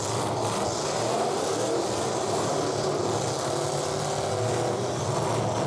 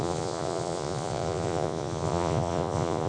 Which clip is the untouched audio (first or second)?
first